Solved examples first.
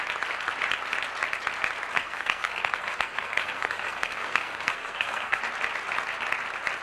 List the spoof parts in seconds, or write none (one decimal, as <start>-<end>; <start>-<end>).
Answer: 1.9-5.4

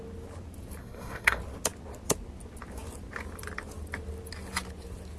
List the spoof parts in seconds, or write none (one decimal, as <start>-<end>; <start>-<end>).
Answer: 0.8-1.4

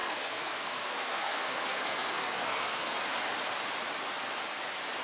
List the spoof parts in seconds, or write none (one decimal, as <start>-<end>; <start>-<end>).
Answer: 0.0-3.0

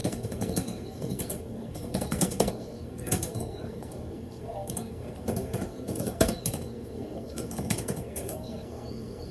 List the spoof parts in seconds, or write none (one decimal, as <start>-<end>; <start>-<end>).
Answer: 0.0-9.3

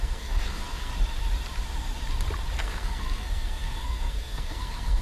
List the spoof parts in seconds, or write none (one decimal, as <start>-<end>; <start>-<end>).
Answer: 0.0-0.9; 2.6-5.0